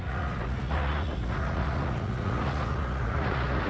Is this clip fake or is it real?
fake